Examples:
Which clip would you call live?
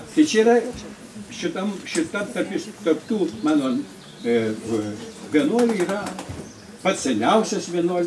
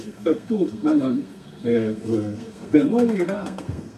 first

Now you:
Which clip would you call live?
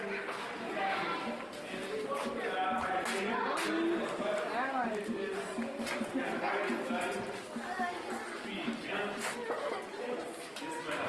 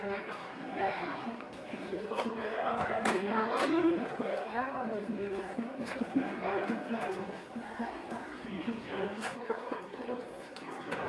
first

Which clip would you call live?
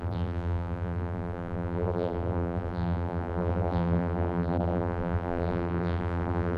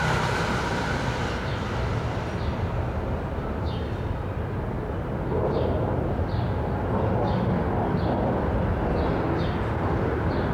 second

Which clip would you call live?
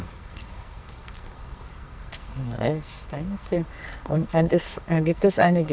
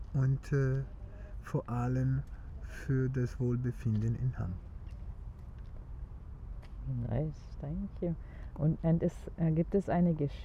second